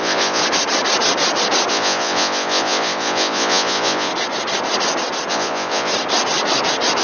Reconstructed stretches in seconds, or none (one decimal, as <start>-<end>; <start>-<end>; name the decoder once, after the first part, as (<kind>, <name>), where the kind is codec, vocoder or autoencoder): 0.0-0.4 (vocoder, Vocos); 1.7-4.1; 5.3-5.9